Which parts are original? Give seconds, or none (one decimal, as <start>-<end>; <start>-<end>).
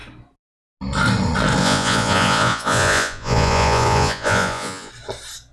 0.0-1.6; 4.9-5.5